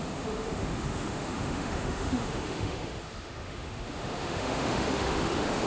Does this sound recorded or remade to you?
remade